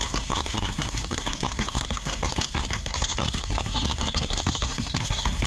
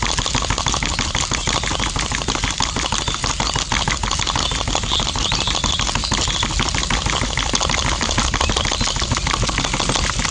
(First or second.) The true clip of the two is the second